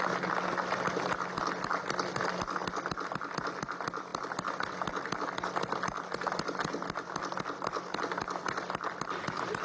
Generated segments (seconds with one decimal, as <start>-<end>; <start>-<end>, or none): none